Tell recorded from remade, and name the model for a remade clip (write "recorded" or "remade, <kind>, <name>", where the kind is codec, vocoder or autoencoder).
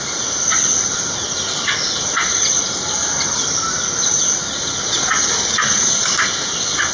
recorded